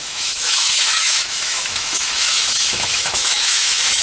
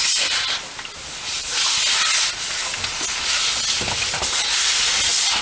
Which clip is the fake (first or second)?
first